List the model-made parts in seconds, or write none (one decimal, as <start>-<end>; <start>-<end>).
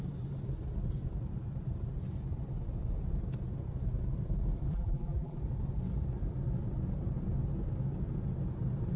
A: 4.7-5.4